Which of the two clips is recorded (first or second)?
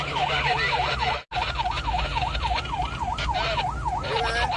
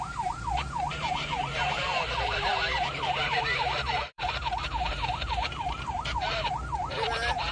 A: first